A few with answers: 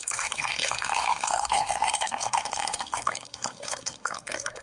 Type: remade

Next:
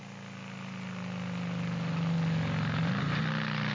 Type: recorded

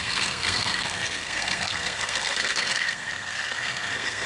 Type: remade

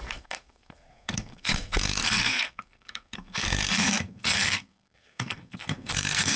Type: remade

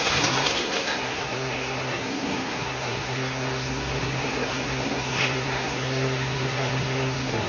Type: remade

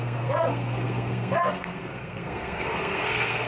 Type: remade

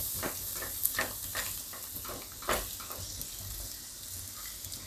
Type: recorded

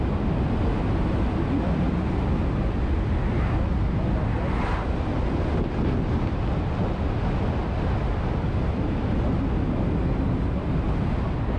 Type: recorded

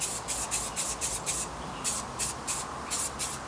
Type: recorded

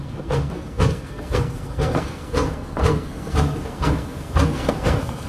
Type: remade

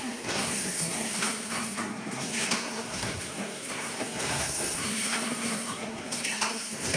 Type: remade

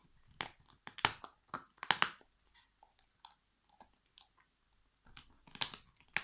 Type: recorded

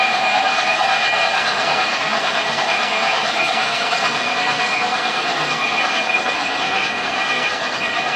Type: remade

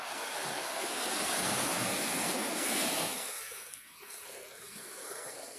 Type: remade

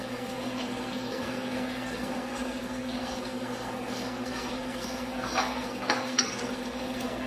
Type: remade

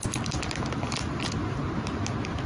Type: recorded